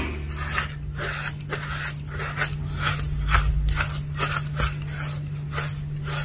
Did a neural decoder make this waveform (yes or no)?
no